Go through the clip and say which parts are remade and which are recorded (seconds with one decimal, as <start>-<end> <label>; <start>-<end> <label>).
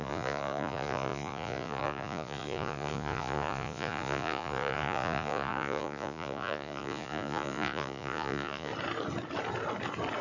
0.0-8.7 remade; 8.7-10.2 recorded